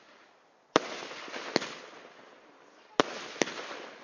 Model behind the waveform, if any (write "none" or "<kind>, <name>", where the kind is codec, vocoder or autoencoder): none